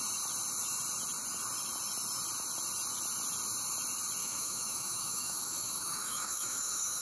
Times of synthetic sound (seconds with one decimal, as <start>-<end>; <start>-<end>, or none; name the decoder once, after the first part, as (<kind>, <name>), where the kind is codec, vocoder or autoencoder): 4.2-7.0 (autoencoder, DAC-VAE)